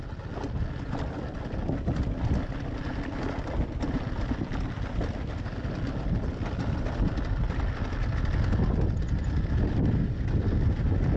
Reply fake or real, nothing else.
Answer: real